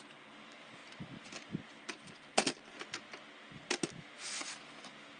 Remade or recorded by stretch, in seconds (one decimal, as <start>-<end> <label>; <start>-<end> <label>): 0.0-5.2 recorded